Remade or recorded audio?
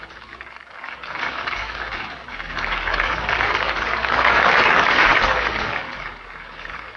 remade